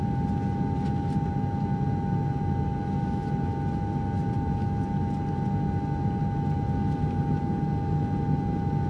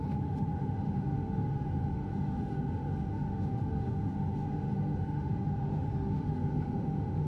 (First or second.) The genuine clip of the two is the first